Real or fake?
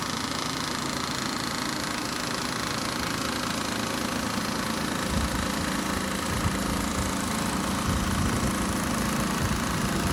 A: real